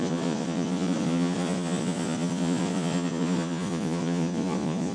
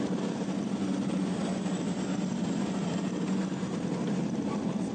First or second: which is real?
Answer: second